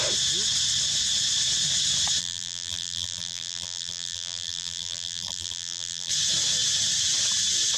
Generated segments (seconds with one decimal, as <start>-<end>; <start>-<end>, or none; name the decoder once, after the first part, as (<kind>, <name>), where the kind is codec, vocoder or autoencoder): 2.2-6.1 (vocoder, BigVGAN v2)